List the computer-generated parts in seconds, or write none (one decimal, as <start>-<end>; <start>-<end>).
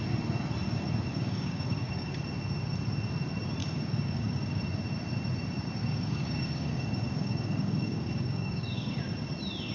1.1-2.1; 3.6-4.6; 5.8-9.0